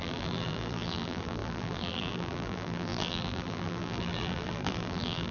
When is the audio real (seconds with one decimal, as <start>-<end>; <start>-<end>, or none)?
none